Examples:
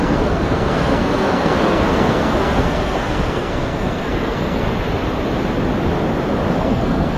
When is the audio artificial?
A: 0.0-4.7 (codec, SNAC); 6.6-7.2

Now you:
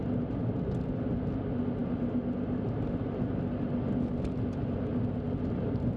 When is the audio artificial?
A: none

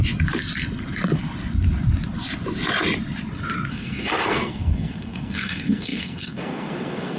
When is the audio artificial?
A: 3.7-7.2 (codec, SNAC)